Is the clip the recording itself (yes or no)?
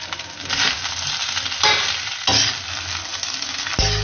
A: yes